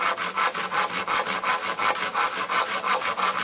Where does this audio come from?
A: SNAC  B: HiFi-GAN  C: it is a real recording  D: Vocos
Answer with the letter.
C